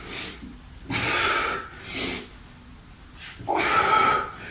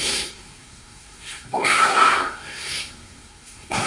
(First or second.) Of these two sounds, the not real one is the second